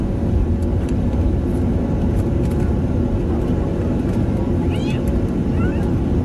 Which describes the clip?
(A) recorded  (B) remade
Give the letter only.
A